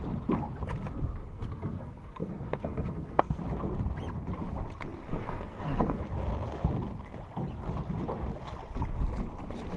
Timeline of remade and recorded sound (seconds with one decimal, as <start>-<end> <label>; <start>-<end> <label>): 0.0-1.2 recorded; 1.2-3.4 remade; 3.4-5.1 recorded; 5.1-6.0 remade; 6.0-9.8 recorded